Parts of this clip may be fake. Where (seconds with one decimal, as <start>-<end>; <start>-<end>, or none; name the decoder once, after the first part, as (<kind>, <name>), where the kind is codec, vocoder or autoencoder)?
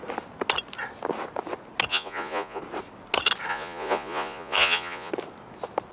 1.9-2.6 (vocoder, Vocos); 3.5-5.1